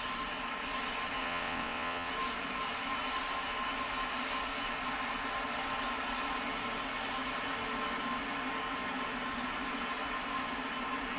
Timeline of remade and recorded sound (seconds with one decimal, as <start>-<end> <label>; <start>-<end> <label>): 0.0-1.2 recorded; 1.2-2.1 remade; 2.1-11.2 recorded

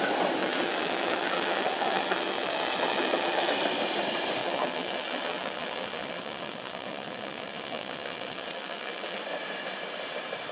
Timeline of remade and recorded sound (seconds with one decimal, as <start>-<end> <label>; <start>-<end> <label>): 0.0-0.4 recorded; 0.4-3.5 remade; 3.5-4.4 recorded; 4.4-9.2 remade; 9.2-10.5 recorded

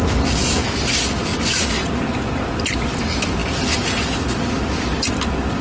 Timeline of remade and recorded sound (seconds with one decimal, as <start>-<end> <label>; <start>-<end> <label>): 0.0-5.6 recorded

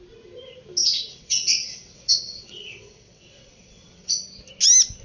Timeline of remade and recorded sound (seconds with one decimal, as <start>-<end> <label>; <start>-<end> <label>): 0.0-1.1 recorded; 1.1-4.1 remade; 4.1-5.0 recorded